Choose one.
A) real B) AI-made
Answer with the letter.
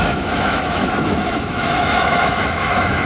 B